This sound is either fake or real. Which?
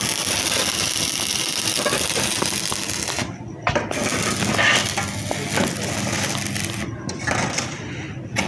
real